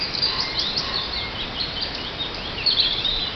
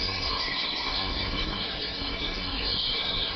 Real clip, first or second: first